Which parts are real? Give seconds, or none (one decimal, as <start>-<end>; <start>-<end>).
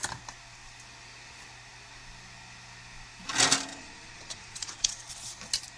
0.0-3.7; 5.1-5.8